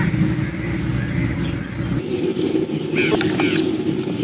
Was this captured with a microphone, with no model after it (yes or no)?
yes